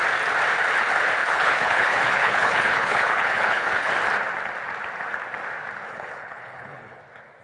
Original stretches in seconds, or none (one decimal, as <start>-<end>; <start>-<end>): 0.0-1.2; 3.9-5.9; 7.0-7.4